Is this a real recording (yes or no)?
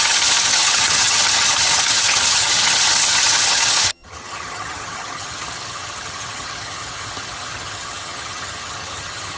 no